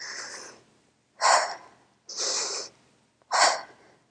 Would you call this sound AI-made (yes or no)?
no